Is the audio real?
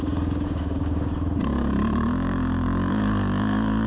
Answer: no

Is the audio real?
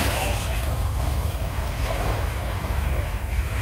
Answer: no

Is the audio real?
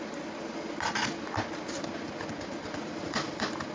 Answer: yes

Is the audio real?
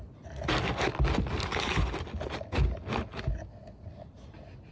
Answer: yes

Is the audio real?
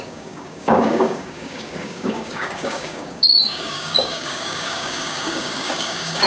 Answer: no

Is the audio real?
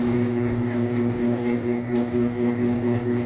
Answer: no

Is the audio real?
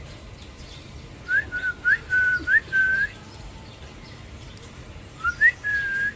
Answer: yes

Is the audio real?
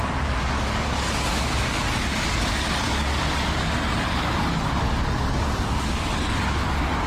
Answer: no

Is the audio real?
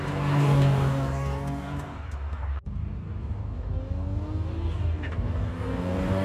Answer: no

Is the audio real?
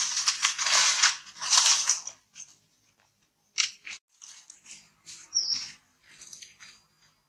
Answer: yes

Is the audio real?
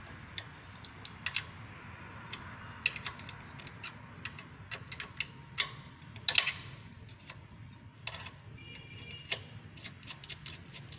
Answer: yes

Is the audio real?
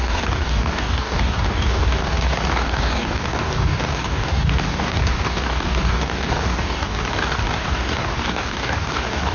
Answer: no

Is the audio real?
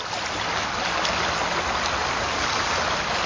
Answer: yes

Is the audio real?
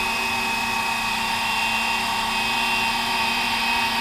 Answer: yes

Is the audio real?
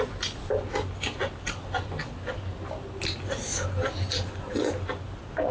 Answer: yes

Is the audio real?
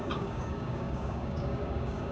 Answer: no